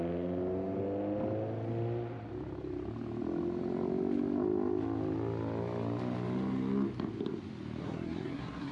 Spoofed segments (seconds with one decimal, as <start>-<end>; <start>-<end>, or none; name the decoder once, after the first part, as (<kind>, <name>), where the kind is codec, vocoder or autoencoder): 7.8-8.7 (codec, SNAC)